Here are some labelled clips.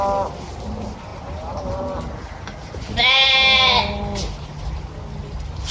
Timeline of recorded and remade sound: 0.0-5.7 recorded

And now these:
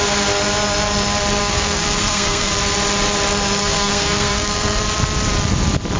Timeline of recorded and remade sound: 0.0-1.4 recorded; 1.4-2.5 remade; 2.5-3.6 recorded; 3.6-4.8 remade; 4.8-6.0 recorded

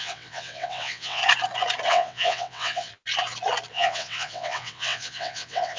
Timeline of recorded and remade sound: 0.0-1.2 remade; 1.2-1.9 recorded; 1.9-2.9 remade; 2.9-3.7 recorded; 3.7-5.8 remade

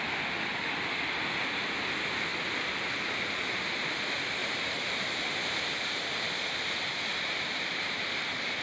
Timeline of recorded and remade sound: 0.0-4.4 recorded; 4.4-8.1 remade; 8.1-8.6 recorded

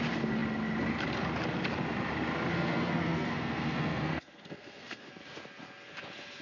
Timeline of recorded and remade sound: 0.0-2.5 recorded; 2.5-5.1 remade; 5.1-6.4 recorded

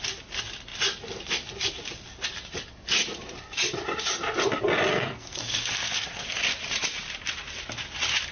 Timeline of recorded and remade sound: 0.0-4.9 recorded; 4.9-6.4 remade; 6.4-8.3 recorded